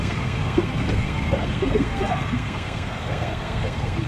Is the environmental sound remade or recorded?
remade